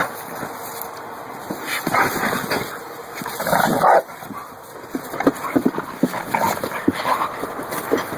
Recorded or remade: recorded